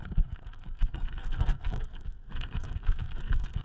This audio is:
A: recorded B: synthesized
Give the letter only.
B